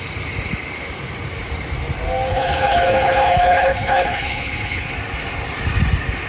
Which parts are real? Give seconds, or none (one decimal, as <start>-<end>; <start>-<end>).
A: 0.0-2.3; 4.9-6.3